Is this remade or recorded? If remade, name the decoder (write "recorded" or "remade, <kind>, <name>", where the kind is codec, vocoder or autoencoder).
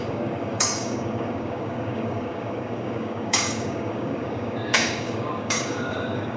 remade, codec, DAC